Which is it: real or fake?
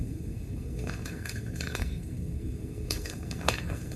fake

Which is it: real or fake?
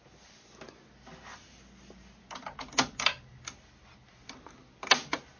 real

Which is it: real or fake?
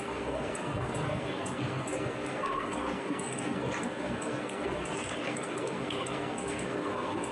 fake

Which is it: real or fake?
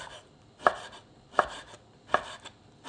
real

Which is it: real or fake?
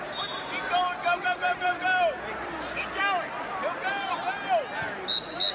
real